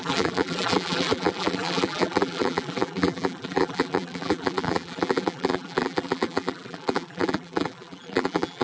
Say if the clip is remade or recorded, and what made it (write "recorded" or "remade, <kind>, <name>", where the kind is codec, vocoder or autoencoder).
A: remade, vocoder, BigVGAN v2